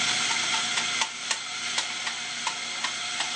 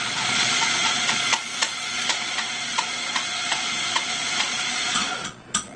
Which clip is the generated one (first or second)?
second